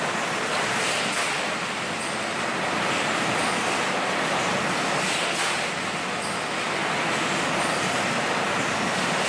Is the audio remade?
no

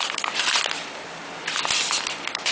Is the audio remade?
yes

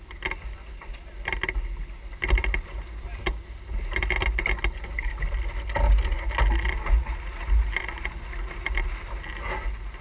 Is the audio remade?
no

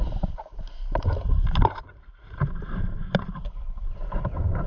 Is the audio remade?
yes